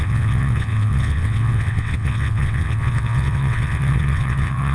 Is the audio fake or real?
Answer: fake